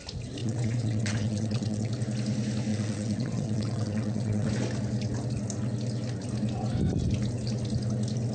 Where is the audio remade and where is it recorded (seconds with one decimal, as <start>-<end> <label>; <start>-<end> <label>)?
0.0-0.4 recorded; 0.4-1.9 remade; 1.9-2.7 recorded; 2.7-4.5 remade; 4.5-8.3 recorded